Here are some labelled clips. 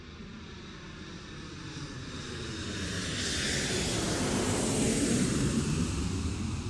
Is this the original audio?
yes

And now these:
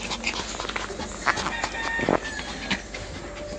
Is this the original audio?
yes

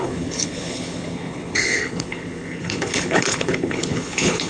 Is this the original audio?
no